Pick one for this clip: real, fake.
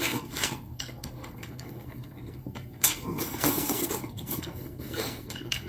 fake